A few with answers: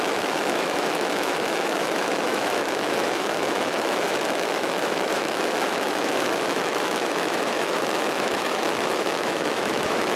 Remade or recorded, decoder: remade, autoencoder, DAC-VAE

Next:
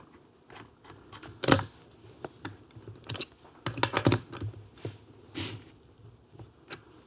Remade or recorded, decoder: recorded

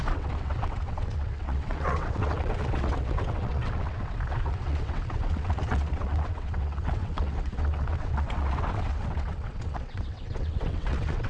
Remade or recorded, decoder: remade, vocoder, WaveNeXt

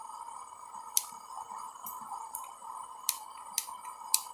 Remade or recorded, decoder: remade, vocoder, BigVGAN v2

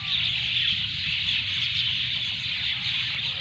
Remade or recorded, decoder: recorded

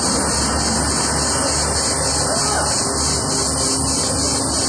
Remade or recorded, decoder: recorded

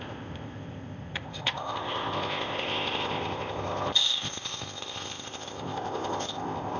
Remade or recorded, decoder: remade, codec, ZipCodec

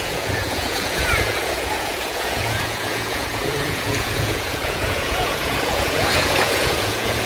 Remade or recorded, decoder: remade, vocoder, Vocos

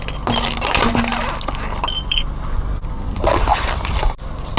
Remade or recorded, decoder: recorded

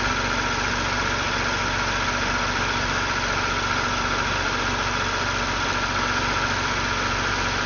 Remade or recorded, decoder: recorded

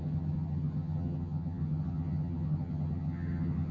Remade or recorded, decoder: remade, vocoder, HiFi-GAN